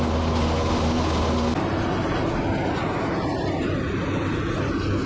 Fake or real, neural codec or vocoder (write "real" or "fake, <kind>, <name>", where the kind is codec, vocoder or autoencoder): real